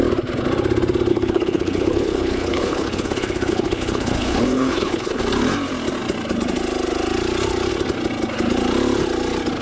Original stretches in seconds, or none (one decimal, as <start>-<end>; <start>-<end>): 0.0-1.1; 5.2-9.6